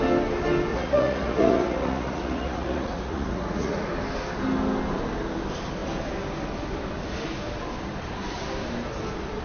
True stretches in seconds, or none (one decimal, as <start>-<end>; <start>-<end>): 0.0-0.7; 3.9-9.4